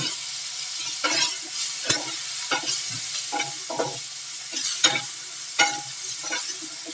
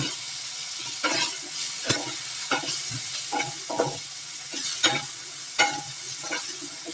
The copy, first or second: second